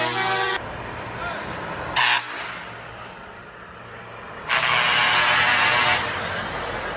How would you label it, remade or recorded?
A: recorded